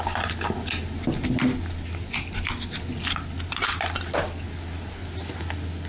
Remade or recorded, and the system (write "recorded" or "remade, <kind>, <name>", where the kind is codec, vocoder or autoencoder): recorded